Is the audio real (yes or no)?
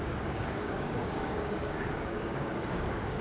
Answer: no